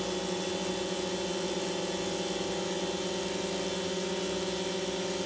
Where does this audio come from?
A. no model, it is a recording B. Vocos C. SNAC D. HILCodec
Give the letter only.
A